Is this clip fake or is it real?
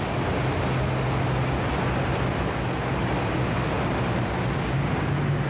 real